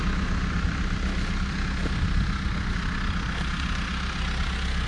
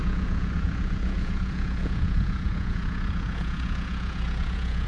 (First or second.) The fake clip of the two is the second